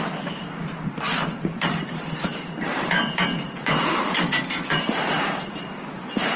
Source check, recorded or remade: remade